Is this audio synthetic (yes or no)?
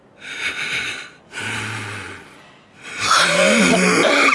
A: no